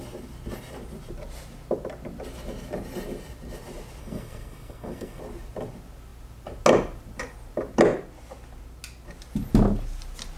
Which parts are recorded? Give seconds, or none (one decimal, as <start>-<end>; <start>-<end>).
0.0-4.0; 5.2-10.4